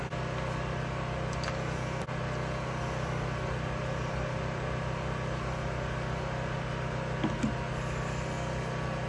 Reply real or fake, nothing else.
real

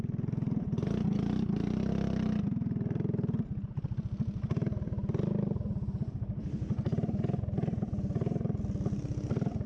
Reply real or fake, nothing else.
real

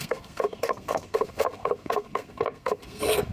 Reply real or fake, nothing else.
fake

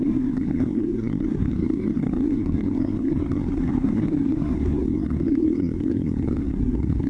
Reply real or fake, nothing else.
fake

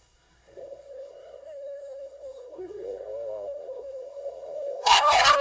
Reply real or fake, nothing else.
fake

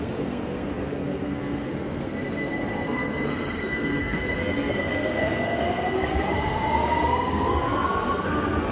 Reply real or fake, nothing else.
fake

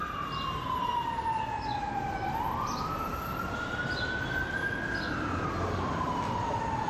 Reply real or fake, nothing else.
real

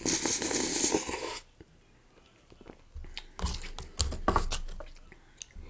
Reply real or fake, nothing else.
real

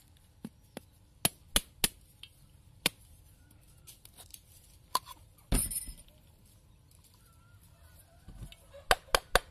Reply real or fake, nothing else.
real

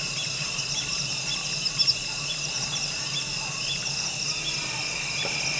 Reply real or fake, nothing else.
real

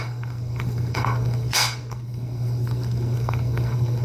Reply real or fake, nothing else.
fake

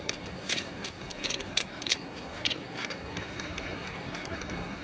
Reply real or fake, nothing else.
fake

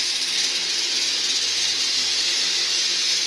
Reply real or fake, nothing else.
real